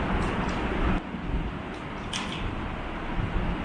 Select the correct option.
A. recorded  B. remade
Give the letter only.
A